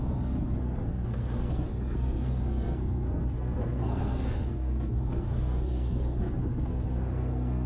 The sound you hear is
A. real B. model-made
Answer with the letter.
B